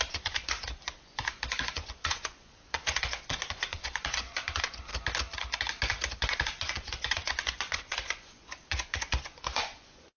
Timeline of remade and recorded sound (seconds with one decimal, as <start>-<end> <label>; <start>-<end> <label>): 0.0-4.9 remade; 4.9-6.1 recorded; 6.1-10.2 remade